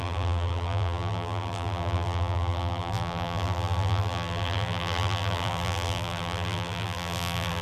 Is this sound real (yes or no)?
no